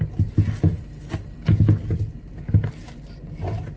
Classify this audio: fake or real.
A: real